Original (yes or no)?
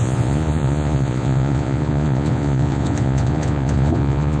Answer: no